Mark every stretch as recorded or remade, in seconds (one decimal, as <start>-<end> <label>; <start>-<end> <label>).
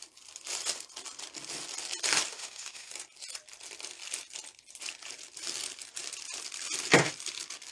0.0-2.3 recorded; 2.3-2.9 remade; 2.9-7.7 recorded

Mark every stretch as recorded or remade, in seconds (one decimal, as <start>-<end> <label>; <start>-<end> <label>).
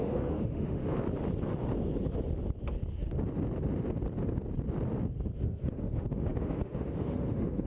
0.0-0.8 remade; 0.8-5.4 recorded; 5.4-7.7 remade